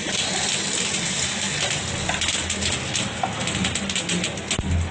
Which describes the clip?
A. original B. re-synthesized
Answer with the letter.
A